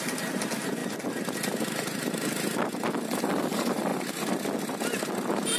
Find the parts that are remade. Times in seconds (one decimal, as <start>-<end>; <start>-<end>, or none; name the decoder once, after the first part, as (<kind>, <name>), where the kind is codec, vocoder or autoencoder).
none